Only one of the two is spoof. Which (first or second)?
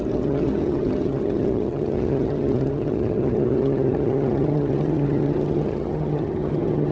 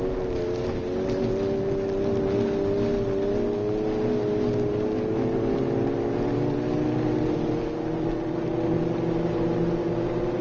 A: first